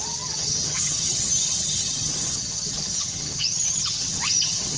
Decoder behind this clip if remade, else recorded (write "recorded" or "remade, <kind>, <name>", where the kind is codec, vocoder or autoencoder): remade, vocoder, HiFi-GAN